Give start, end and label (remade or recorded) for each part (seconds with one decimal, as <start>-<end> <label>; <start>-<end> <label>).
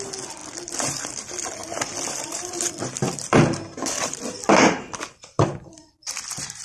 0.0-6.6 remade